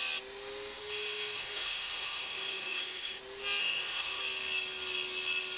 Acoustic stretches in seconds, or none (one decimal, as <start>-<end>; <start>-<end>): 0.0-0.8; 3.2-3.6; 4.2-5.6